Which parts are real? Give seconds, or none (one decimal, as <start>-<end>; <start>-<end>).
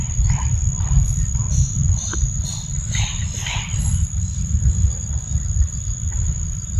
0.0-6.8